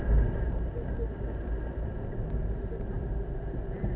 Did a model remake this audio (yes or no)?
yes